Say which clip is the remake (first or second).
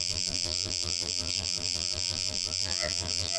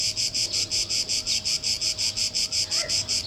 first